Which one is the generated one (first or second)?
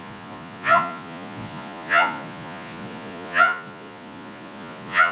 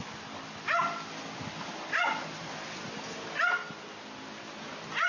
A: first